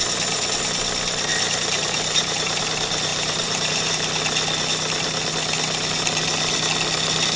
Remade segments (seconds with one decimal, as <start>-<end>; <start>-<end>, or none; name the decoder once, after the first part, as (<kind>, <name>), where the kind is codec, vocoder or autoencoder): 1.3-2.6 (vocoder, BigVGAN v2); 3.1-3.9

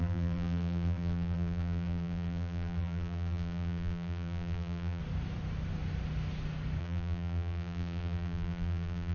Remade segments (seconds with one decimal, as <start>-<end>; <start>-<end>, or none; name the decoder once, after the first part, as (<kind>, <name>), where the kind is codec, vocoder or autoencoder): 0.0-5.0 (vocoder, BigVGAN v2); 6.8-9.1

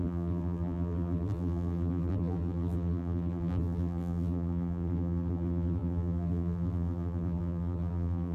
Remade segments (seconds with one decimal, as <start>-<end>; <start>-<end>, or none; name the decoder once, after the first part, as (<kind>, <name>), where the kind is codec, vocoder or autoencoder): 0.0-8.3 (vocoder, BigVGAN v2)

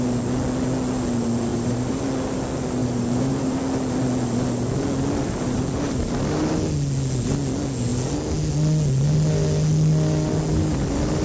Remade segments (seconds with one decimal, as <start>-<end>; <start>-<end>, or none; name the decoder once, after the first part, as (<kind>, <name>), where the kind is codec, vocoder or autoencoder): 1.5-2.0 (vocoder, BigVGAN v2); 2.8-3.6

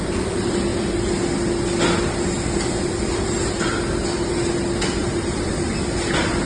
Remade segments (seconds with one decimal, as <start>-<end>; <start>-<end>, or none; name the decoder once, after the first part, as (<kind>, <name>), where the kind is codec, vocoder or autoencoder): 5.0-5.7 (vocoder, BigVGAN v2)